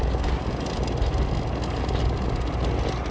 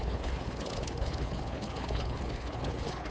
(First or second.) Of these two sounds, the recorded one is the first